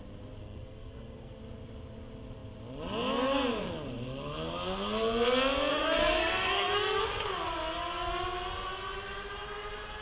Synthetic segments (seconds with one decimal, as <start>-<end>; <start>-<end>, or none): 0.4-1.4; 5.7-7.0